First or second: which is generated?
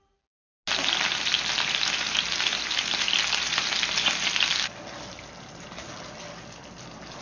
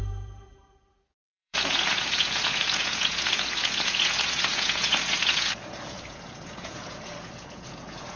second